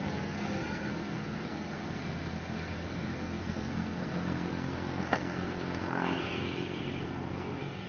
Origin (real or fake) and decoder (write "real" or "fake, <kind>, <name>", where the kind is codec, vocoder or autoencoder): fake, codec, SNAC